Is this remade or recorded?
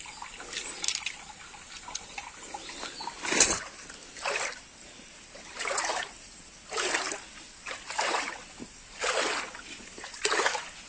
recorded